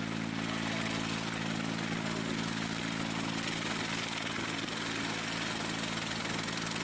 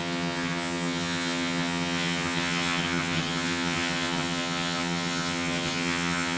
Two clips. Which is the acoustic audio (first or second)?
first